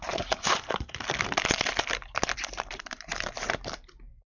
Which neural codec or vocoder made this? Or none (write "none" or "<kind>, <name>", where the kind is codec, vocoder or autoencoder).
vocoder, BigVGAN v2